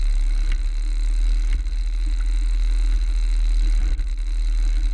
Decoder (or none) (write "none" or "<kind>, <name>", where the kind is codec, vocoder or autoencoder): none